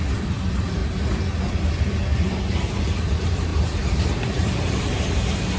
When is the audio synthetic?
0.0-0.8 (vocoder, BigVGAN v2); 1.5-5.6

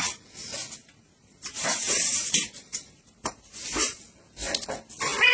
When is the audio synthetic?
0.8-4.0 (vocoder, BigVGAN v2)

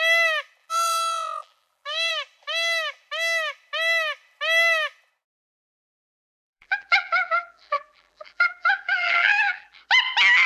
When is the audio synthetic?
0.6-2.1 (vocoder, BigVGAN v2); 5.6-9.8

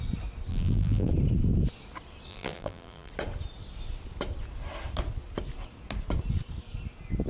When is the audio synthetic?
0.5-1.1 (vocoder, BigVGAN v2); 2.3-3.1

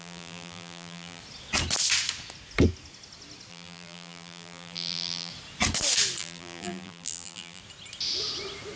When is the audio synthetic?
0.0-1.2 (vocoder, BigVGAN v2); 3.5-5.3; 6.2-7.6